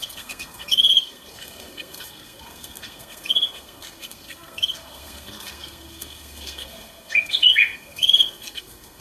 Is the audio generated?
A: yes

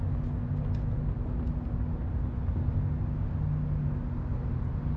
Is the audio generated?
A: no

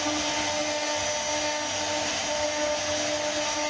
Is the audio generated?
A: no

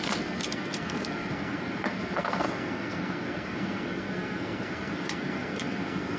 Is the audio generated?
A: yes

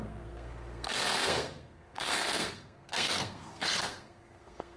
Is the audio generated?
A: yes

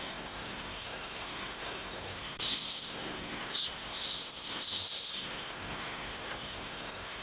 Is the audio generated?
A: yes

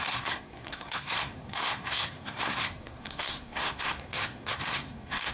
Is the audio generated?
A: yes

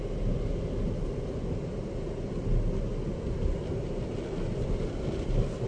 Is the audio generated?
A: no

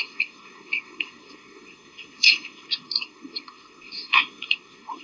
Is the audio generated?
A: yes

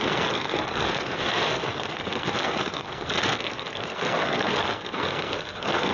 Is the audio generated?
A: yes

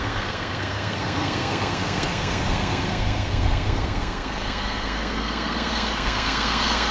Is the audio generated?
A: yes